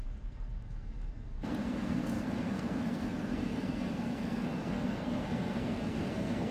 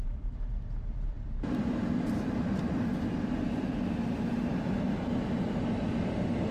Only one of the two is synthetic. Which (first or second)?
first